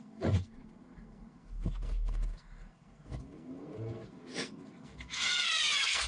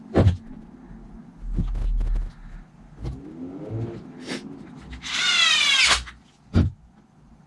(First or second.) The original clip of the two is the second